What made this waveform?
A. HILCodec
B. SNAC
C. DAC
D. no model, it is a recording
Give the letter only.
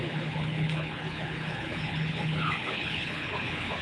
A